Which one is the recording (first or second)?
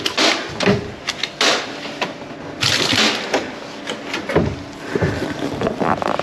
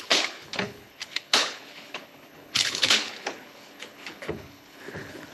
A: first